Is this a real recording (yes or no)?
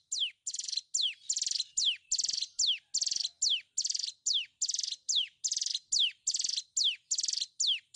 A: yes